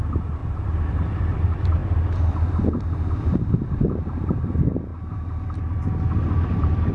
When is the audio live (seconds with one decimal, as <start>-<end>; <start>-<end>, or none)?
4.9-6.4

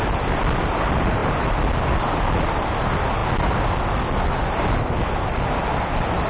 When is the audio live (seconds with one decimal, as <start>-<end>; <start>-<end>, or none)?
0.0-6.3

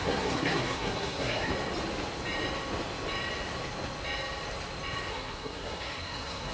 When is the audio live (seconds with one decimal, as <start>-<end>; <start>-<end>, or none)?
1.5-5.1

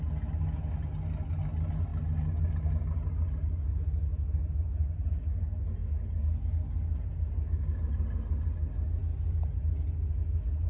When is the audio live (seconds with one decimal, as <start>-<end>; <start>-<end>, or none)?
0.0-10.7